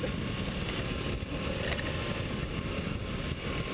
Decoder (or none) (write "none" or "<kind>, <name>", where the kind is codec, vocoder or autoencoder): none